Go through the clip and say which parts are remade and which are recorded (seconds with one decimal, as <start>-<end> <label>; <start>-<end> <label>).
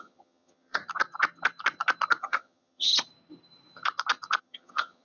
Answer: 0.0-0.8 remade; 0.8-2.2 recorded; 2.2-2.9 remade; 2.9-4.4 recorded; 4.4-5.0 remade